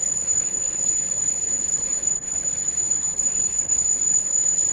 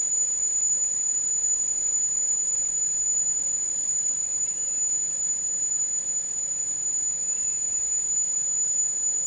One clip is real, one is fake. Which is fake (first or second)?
first